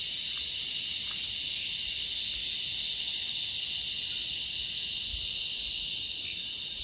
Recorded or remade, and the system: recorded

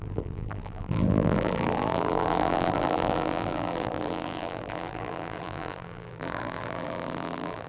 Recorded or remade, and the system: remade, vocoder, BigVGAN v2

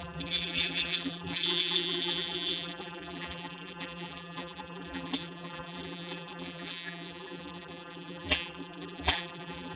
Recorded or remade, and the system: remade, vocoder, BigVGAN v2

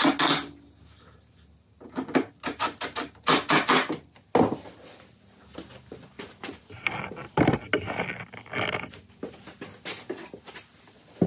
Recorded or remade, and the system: recorded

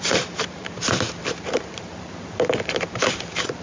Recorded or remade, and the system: remade, vocoder, BigVGAN v2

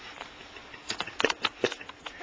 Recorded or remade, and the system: recorded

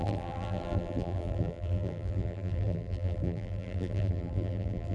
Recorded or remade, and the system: remade, vocoder, BigVGAN v2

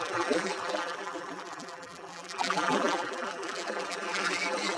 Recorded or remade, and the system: remade, vocoder, BigVGAN v2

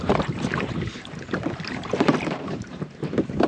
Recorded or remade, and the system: remade, vocoder, BigVGAN v2